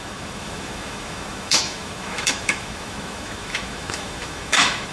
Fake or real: fake